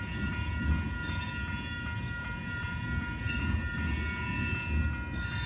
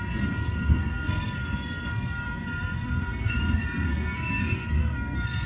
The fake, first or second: second